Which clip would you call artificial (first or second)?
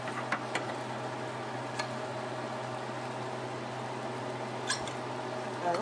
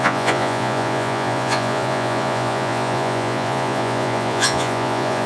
second